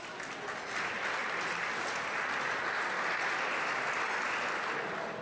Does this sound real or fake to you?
real